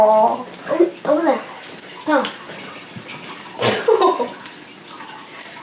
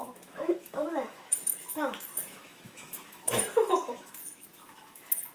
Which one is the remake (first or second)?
second